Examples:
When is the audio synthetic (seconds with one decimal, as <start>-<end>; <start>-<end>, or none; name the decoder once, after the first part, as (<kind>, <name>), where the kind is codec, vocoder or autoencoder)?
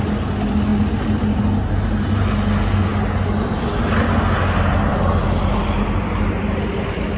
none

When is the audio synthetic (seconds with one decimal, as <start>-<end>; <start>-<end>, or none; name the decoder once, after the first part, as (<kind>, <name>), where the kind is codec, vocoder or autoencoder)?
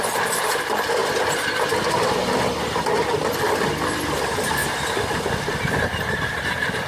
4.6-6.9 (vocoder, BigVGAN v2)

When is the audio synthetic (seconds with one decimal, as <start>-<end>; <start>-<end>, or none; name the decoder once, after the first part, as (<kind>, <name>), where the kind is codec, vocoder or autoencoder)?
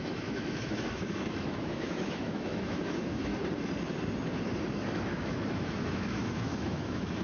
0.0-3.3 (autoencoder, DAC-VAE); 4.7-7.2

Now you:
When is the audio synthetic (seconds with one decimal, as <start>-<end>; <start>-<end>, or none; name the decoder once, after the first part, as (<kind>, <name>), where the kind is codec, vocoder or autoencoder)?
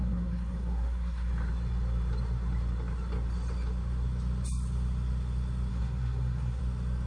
0.0-1.3 (codec, SNAC); 5.7-6.6